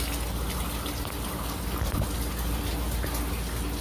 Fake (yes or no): no